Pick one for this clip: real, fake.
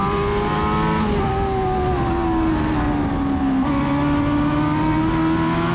real